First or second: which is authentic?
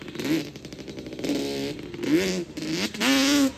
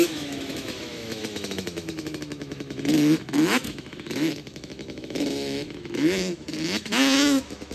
first